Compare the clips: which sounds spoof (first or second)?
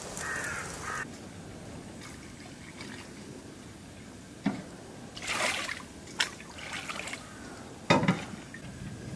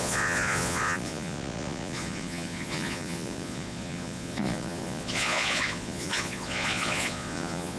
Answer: second